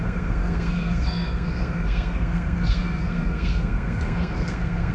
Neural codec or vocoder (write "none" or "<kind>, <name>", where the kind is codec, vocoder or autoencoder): codec, SNAC